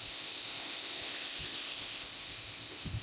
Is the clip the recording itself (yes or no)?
no